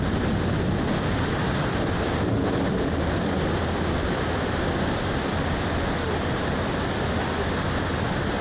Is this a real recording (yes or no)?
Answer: yes